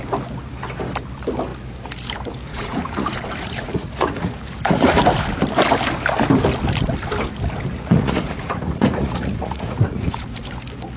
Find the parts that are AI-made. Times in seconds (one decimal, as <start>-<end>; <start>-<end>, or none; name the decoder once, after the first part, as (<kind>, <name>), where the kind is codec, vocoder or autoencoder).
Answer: 2.5-5.0 (vocoder, Vocos); 7.7-10.5